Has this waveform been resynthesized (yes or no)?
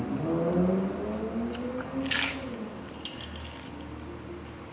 no